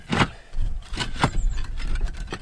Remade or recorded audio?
recorded